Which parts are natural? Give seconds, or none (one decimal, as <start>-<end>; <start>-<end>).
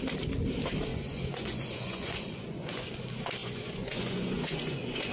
0.0-0.9; 2.9-3.4